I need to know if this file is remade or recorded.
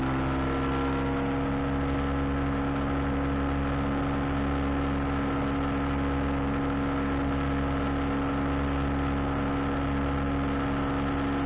recorded